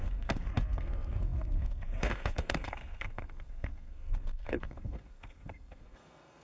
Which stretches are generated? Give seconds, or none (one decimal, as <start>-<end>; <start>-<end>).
0.0-6.4